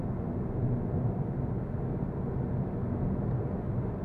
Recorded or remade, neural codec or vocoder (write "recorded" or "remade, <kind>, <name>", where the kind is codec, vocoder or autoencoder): recorded